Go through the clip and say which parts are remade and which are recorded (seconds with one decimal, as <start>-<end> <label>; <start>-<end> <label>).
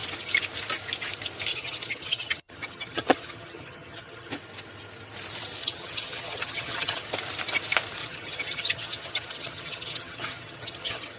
0.0-1.5 recorded; 1.5-4.3 remade; 4.3-5.6 recorded; 5.6-7.1 remade; 7.1-8.0 recorded; 8.0-11.2 remade